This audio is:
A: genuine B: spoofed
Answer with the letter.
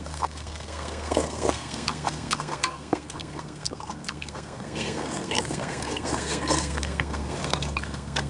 B